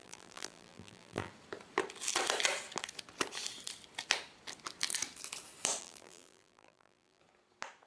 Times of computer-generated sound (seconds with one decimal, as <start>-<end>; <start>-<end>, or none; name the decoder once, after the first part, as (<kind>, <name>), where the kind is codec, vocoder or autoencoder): 0.0-1.3 (vocoder, BigVGAN v2); 5.8-7.2